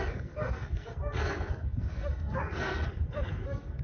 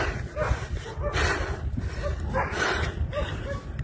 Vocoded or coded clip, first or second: first